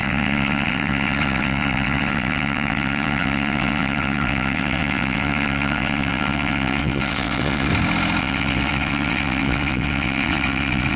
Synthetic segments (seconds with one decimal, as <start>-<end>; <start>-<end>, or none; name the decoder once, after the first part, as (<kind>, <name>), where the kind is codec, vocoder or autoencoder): 0.0-7.7 (vocoder, WaveNeXt); 8.2-11.0